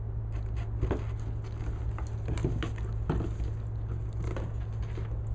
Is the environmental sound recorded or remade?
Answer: recorded